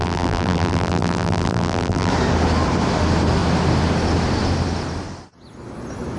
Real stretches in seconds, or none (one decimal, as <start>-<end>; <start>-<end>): 2.1-6.2